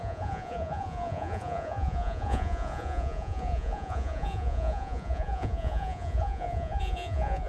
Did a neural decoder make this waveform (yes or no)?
yes